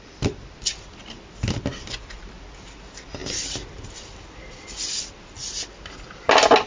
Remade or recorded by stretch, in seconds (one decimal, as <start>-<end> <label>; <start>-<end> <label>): 0.0-6.7 recorded